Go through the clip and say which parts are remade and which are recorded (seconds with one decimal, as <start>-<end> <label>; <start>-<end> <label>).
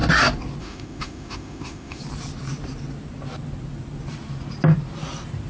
0.0-0.6 recorded; 0.6-2.0 remade; 2.0-5.5 recorded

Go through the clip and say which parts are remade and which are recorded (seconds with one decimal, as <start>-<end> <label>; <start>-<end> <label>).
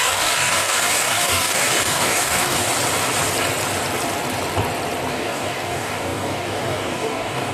0.0-2.7 remade; 2.7-5.1 recorded; 5.1-7.5 remade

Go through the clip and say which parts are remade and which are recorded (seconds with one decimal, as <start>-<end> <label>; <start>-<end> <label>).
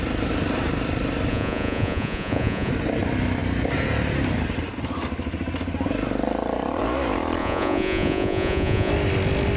0.0-1.3 recorded; 1.3-2.7 remade; 2.7-7.4 recorded; 7.4-8.9 remade; 8.9-9.6 recorded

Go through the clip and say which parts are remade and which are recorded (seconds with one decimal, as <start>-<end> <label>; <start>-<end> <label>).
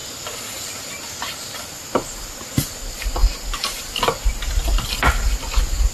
0.0-5.9 recorded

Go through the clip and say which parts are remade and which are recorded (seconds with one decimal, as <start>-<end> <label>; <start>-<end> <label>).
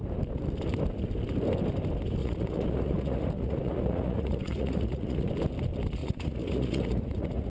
0.0-2.2 recorded; 2.2-5.3 remade; 5.3-6.0 recorded; 6.0-7.5 remade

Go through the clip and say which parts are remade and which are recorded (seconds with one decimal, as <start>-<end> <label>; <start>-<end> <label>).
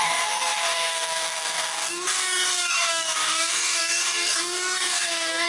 0.0-5.5 remade